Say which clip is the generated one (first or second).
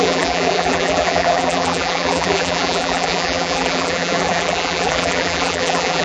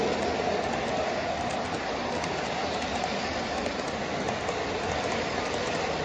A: first